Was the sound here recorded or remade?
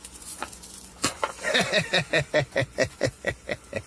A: remade